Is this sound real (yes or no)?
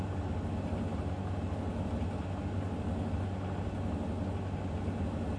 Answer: yes